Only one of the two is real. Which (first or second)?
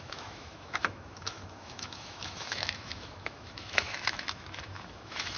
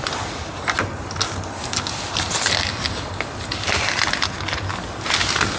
second